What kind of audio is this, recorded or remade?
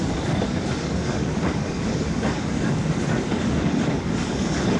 remade